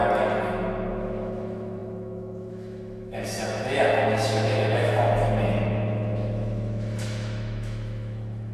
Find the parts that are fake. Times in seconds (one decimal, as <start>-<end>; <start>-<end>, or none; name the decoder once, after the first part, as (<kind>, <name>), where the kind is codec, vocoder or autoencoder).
0.9-8.5 (autoencoder, DAC-VAE)